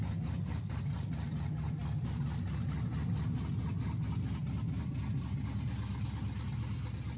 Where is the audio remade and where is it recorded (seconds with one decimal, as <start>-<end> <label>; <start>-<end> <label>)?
0.0-7.2 recorded